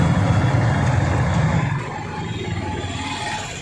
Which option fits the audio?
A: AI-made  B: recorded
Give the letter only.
B